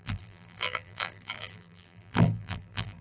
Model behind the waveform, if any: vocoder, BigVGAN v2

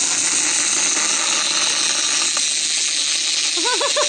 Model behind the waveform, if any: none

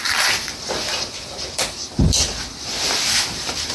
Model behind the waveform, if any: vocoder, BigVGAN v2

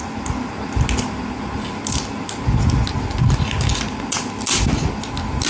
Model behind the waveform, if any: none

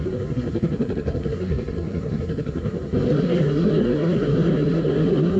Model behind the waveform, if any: codec, SNAC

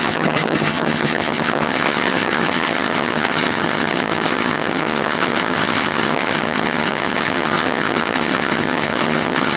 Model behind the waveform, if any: vocoder, HiFi-GAN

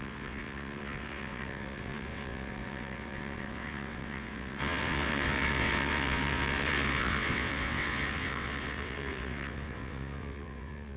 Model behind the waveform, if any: vocoder, WaveNeXt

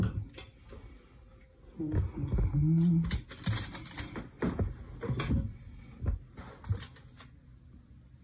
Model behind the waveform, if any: none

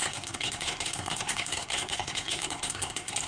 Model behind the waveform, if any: codec, SNAC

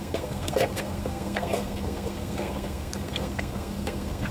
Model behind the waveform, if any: codec, SNAC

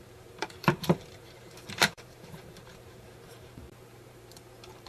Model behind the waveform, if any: vocoder, BigVGAN v2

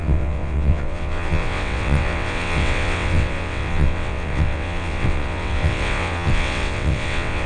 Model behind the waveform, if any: vocoder, WaveNeXt